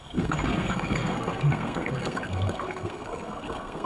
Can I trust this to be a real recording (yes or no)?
no